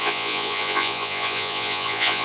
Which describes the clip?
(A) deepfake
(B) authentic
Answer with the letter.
A